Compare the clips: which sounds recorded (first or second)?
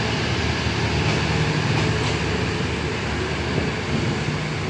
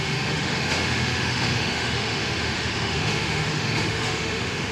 first